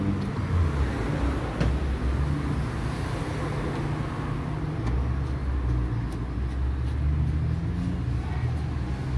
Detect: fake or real real